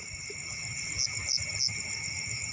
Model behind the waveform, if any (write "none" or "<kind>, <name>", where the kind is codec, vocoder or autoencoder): none